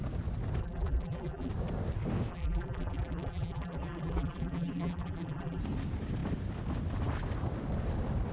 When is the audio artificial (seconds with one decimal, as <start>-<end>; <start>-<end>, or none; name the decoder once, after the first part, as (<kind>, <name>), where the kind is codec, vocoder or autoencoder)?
0.6-1.5 (vocoder, BigVGAN v2); 2.3-5.6